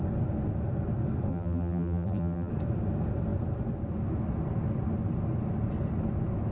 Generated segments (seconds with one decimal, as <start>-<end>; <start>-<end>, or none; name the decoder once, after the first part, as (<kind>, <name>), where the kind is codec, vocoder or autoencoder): 1.3-2.5 (vocoder, BigVGAN v2)